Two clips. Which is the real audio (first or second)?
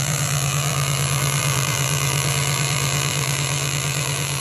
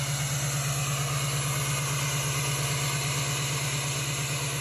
second